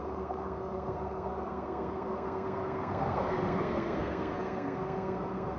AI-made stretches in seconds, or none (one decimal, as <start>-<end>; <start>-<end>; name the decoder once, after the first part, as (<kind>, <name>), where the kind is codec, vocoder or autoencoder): 0.0-5.6 (codec, SNAC)